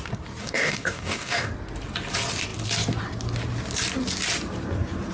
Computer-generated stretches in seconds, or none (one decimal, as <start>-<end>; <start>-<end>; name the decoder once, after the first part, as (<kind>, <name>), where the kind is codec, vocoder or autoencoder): 0.4-1.5 (codec, DAC)